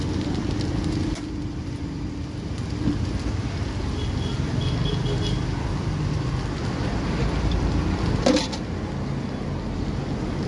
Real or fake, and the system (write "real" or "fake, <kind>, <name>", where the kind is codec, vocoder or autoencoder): real